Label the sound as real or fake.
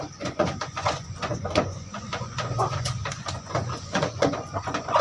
fake